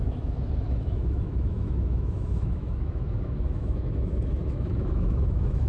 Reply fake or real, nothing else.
fake